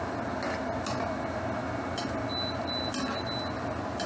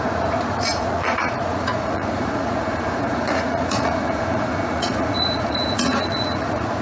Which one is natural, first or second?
first